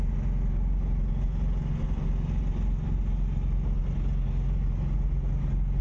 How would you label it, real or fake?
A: real